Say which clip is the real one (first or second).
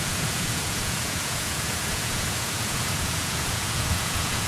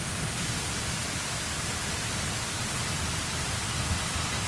second